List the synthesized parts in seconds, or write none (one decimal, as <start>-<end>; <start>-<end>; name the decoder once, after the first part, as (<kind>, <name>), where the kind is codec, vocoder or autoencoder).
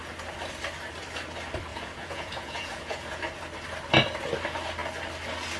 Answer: 1.7-3.2 (vocoder, Vocos)